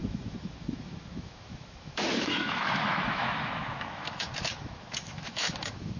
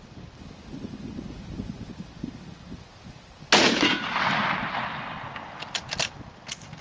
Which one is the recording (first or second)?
second